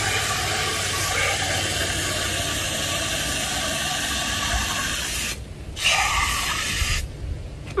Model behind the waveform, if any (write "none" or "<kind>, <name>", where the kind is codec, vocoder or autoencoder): none